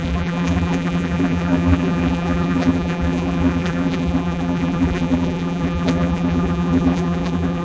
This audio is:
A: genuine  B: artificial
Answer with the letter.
B